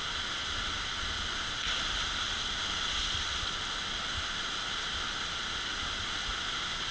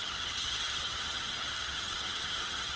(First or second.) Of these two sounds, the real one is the first